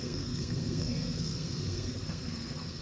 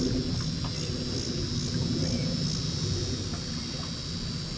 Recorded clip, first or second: second